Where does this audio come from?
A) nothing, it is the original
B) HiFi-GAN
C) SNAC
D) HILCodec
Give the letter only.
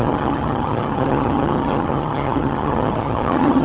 B